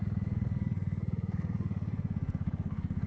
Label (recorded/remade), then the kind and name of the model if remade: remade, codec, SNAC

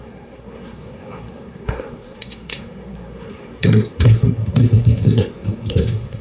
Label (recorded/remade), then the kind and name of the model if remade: remade, codec, SNAC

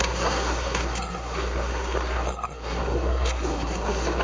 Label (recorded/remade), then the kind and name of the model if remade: remade, codec, SNAC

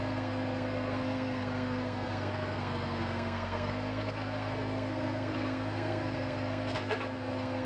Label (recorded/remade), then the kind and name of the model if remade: remade, codec, SNAC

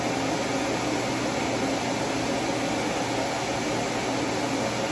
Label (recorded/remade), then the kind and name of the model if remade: recorded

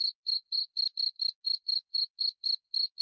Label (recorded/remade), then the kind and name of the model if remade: recorded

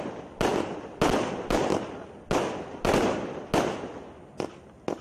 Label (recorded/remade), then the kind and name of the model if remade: recorded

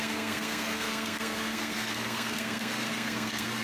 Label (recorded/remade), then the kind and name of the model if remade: remade, codec, SNAC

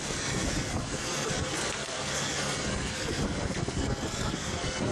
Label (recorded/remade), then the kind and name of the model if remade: remade, codec, SNAC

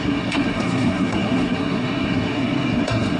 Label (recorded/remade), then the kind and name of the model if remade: remade, codec, SNAC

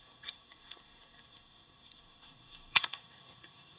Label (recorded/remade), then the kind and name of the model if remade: remade, codec, SNAC